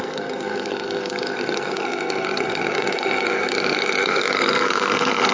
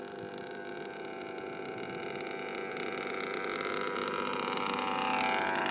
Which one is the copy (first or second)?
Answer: first